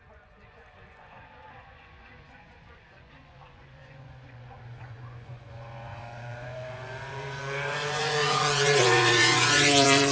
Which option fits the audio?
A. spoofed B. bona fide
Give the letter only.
A